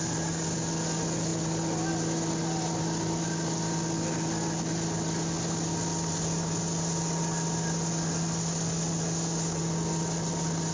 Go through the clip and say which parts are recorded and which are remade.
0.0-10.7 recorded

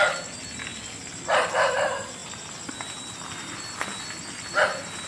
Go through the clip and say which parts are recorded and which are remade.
0.0-5.1 recorded